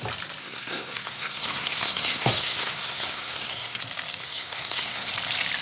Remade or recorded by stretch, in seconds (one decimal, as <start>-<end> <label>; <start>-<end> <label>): 0.0-0.4 recorded; 0.4-3.8 remade; 3.8-4.2 recorded; 4.2-5.1 remade; 5.1-5.6 recorded